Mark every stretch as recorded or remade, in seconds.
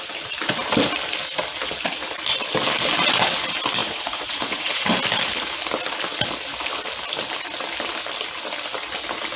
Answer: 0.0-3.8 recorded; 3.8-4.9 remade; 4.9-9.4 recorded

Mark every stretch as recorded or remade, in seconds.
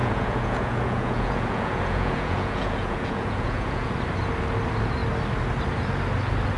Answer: 0.0-3.9 remade; 3.9-6.6 recorded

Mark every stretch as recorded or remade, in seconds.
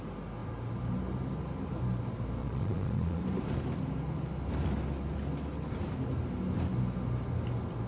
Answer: 0.0-2.4 recorded; 2.4-3.2 remade; 3.2-7.9 recorded